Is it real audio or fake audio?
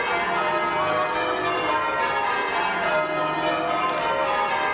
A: real